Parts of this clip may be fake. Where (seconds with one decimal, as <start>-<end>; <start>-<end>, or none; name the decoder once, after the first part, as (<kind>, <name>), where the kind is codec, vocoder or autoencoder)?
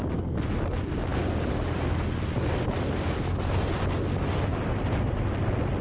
none